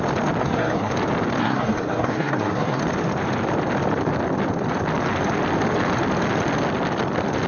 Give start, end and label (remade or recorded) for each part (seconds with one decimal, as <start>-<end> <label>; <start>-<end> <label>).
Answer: 0.0-0.4 recorded; 0.4-0.9 remade; 0.9-1.4 recorded; 1.4-2.8 remade; 2.8-7.5 recorded